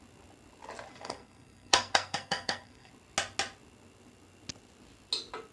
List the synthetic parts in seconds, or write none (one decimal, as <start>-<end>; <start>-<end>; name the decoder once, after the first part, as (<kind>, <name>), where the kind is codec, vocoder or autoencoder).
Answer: 0.9-2.9 (codec, SNAC)